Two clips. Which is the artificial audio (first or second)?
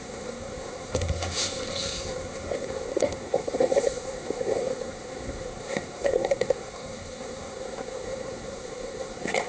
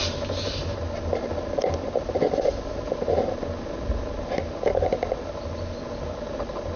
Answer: first